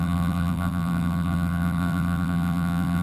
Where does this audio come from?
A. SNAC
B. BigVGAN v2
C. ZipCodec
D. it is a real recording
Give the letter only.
B